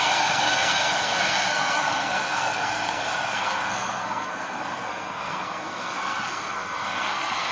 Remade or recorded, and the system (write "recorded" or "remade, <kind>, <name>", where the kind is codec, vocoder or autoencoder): remade, codec, SNAC